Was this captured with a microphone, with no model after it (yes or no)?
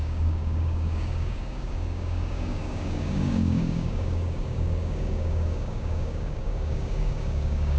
no